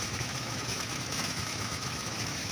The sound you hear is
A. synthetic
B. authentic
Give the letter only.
A